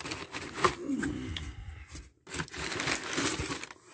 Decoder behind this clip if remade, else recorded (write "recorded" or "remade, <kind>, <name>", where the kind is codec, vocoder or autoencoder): recorded